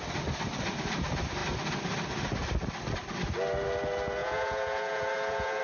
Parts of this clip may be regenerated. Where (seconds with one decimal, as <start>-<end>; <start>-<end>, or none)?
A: 4.2-5.6